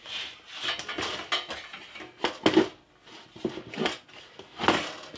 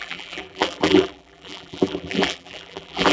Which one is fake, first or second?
second